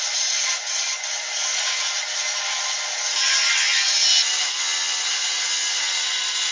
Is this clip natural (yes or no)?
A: yes